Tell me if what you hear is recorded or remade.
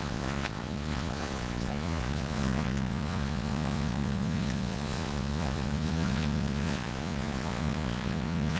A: remade